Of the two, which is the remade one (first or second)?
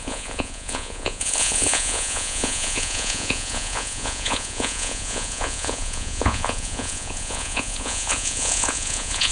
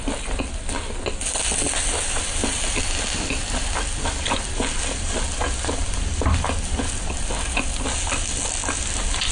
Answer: first